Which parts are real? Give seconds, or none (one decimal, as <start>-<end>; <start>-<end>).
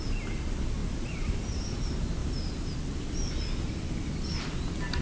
0.0-5.0